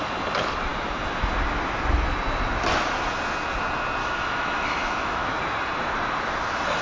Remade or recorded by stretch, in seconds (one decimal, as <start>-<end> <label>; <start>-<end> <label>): 0.0-4.0 recorded; 4.0-5.4 remade; 5.4-6.8 recorded

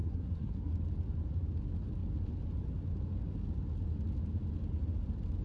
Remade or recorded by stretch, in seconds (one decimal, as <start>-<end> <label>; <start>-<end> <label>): 0.0-0.7 remade; 0.7-5.4 recorded

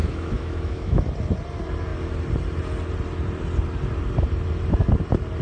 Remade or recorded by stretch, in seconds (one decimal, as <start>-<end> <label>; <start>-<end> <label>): 0.0-1.0 remade; 1.0-5.4 recorded

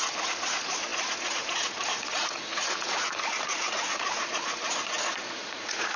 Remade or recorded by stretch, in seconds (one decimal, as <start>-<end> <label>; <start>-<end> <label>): 0.0-6.0 remade

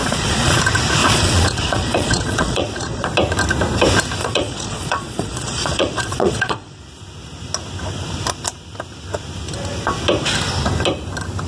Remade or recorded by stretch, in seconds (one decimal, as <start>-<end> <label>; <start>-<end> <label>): 0.0-0.6 remade; 0.6-1.0 recorded; 1.0-3.1 remade; 3.1-4.2 recorded; 4.2-6.8 remade; 6.8-11.5 recorded

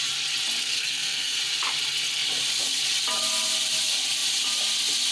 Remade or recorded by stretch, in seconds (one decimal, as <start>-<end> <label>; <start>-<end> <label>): 0.0-0.6 recorded; 0.6-1.4 remade; 1.4-5.1 recorded

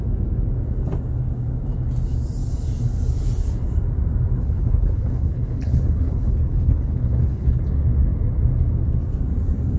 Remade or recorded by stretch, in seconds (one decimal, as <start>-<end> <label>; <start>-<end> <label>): 0.0-4.4 recorded; 4.4-7.6 remade; 7.6-9.8 recorded

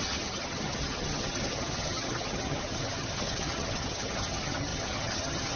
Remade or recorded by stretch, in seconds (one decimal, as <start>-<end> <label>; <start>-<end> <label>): 0.0-5.6 remade